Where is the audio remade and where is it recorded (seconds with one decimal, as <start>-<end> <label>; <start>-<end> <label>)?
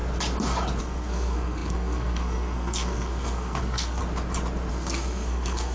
0.0-0.8 recorded; 0.8-4.0 remade; 4.0-4.7 recorded; 4.7-5.7 remade